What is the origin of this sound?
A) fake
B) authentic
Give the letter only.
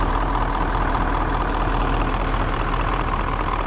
A